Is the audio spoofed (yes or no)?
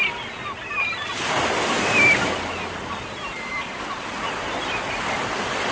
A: no